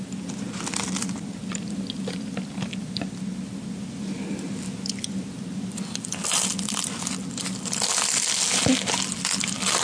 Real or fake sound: real